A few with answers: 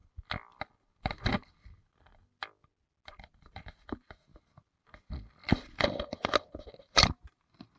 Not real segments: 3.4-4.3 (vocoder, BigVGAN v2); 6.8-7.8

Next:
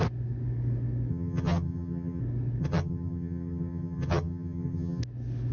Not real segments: 1.1-2.2 (vocoder, HiFi-GAN); 2.6-5.0

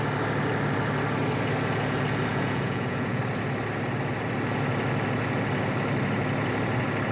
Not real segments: 2.3-3.2 (vocoder, Vocos)

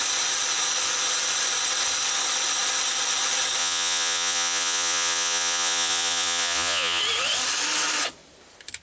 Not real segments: 3.6-7.0 (vocoder, Vocos)

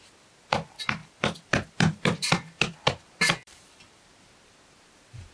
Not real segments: 1.0-4.2 (vocoder, BigVGAN v2)